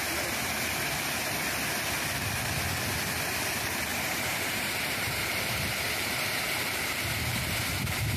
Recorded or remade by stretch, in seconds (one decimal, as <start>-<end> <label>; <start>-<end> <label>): 0.0-3.9 recorded; 3.9-7.7 remade; 7.7-8.2 recorded